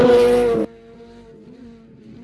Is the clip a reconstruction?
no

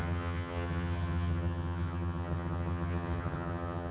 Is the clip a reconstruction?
yes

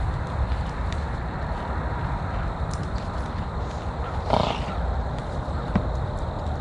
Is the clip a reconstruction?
no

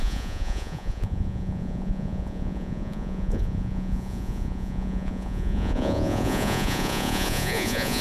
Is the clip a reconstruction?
yes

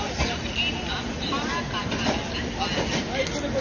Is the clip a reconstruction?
no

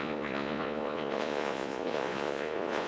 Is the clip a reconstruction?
yes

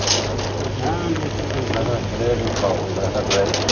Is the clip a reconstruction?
no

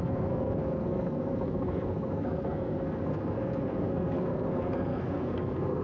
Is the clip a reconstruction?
yes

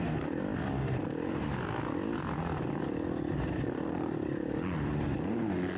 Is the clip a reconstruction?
no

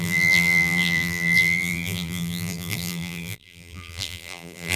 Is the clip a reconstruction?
yes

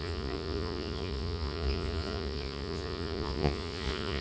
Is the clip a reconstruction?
yes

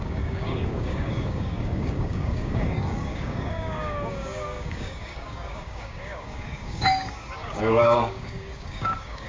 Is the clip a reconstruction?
yes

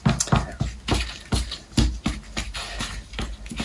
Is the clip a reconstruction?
no